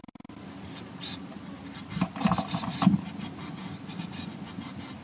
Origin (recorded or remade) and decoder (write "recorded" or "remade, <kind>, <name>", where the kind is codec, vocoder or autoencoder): recorded